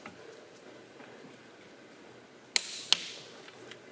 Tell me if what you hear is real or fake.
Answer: real